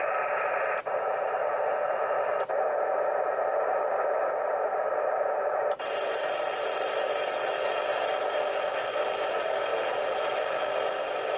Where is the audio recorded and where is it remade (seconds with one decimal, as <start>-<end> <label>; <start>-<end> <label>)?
0.0-11.4 recorded